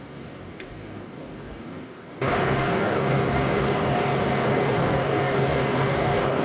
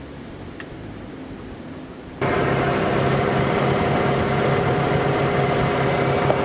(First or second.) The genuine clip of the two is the second